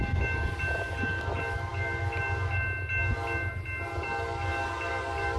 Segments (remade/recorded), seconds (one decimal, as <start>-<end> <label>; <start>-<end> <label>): 0.0-5.4 recorded